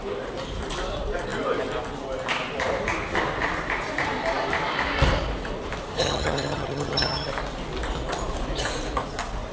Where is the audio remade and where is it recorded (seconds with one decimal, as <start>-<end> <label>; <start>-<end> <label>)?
0.0-6.0 recorded; 6.0-7.3 remade; 7.3-9.5 recorded